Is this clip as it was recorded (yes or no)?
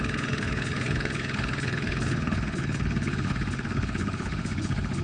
no